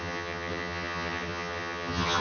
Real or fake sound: fake